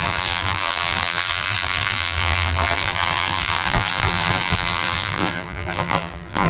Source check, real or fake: fake